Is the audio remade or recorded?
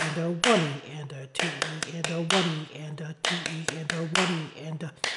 recorded